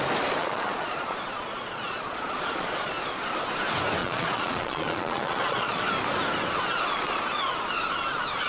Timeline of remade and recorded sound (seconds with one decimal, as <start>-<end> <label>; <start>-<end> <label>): 0.0-0.4 recorded; 0.4-2.9 remade; 2.9-4.0 recorded; 4.0-5.9 remade; 5.9-8.5 recorded